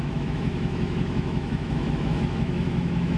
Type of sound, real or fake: fake